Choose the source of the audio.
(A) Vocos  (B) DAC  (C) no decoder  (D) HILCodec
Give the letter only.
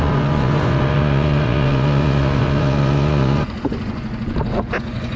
A